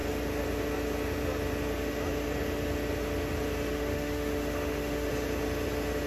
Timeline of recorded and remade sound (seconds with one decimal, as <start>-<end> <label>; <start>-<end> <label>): 0.0-3.7 recorded; 3.7-5.1 remade; 5.1-6.1 recorded